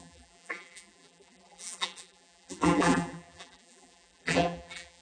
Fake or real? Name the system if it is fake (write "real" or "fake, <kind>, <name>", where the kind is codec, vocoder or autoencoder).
fake, vocoder, BigVGAN v2